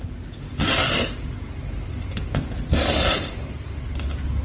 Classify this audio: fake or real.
real